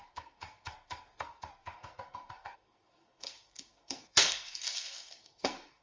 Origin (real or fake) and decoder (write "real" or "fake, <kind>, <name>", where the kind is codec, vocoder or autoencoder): fake, codec, SNAC